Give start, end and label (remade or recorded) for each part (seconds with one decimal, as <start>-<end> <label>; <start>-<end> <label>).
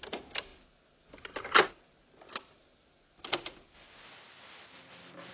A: 0.0-5.3 recorded